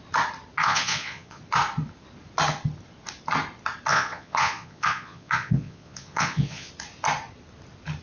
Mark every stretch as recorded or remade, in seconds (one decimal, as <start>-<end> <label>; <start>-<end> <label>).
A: 0.0-0.6 recorded; 0.6-1.4 remade; 1.4-3.9 recorded; 3.9-6.7 remade; 6.7-8.0 recorded